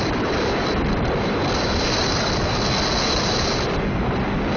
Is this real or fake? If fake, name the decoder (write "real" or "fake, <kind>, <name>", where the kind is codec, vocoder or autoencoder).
real